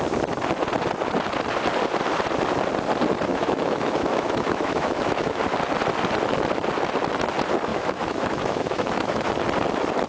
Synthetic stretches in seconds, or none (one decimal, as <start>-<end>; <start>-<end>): 3.3-5.4; 7.7-9.3